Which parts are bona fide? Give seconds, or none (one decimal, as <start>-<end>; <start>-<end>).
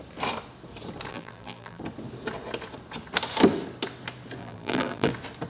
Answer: 0.0-1.1; 1.8-4.4; 5.1-5.5